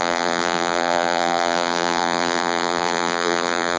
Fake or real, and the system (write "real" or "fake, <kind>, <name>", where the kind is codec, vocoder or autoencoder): fake, vocoder, BigVGAN v2